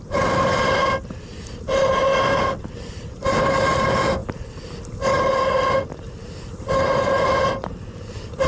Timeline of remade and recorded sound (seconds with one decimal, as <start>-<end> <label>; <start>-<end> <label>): 0.0-8.5 recorded